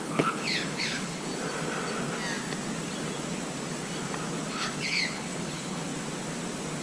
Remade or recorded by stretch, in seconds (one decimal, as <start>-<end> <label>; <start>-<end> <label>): 0.0-1.3 remade; 1.3-4.5 recorded; 4.5-5.9 remade; 5.9-6.8 recorded